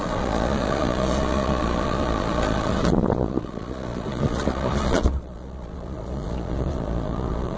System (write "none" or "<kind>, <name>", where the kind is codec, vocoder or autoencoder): vocoder, Vocos